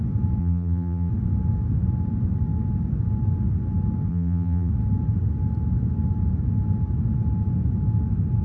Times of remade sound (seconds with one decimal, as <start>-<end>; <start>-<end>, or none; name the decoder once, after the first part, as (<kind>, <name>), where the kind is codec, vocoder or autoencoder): 0.4-1.1 (vocoder, BigVGAN v2); 4.1-4.7